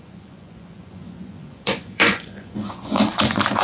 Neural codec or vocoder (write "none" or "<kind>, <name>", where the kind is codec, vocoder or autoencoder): vocoder, Vocos